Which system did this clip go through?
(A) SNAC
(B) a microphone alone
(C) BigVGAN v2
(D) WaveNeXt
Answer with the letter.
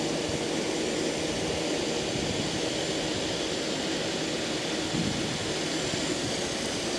B